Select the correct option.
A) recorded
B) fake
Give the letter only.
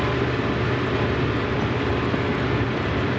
A